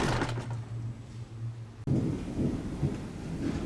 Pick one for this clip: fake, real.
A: real